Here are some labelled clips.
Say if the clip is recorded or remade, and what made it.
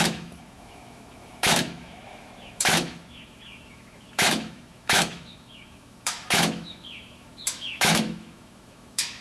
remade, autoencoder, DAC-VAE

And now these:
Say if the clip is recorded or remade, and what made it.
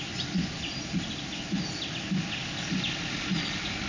recorded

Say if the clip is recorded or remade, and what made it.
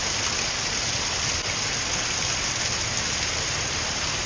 recorded